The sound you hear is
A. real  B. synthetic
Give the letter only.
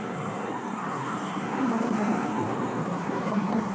B